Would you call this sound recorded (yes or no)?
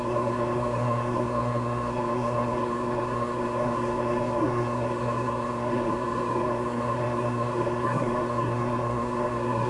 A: no